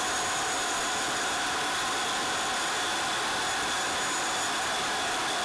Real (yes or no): yes